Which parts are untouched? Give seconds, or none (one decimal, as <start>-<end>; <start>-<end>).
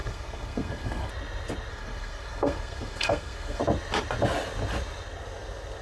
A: 1.1-1.7; 3.6-5.8